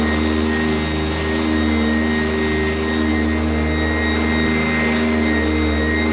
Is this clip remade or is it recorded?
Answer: recorded